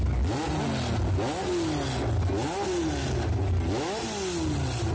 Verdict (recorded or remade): recorded